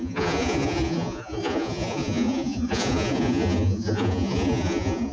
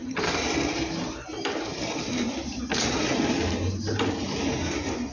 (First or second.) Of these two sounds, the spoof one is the first